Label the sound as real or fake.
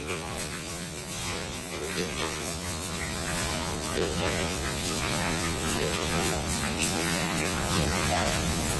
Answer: fake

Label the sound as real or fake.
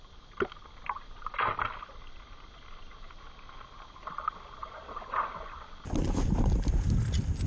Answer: real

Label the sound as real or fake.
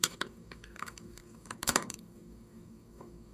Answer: fake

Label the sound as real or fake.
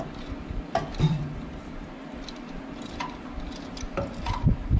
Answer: fake